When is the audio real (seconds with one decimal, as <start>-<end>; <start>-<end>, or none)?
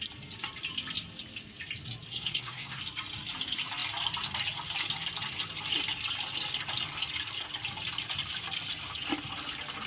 0.0-2.1; 2.8-9.9